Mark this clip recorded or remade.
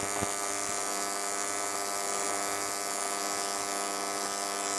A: recorded